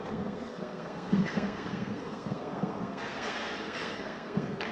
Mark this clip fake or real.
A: fake